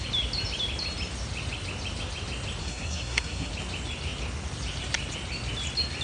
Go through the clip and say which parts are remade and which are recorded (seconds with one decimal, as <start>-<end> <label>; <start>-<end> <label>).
0.0-2.6 recorded; 2.6-3.5 remade; 3.5-6.0 recorded